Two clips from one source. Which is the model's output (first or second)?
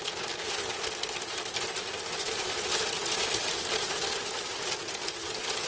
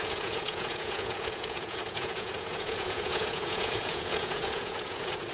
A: second